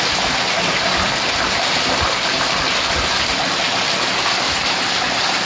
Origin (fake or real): real